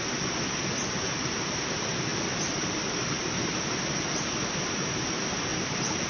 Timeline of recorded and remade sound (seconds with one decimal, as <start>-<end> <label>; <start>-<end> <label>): 0.0-6.1 recorded